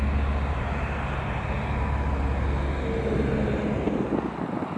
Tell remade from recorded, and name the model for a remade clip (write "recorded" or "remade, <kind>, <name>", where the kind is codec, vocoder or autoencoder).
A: recorded